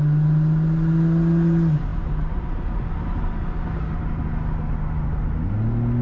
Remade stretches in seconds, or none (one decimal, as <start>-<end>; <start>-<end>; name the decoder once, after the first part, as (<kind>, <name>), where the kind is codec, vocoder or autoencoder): none